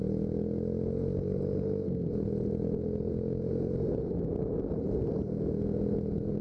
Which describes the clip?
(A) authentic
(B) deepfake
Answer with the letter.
A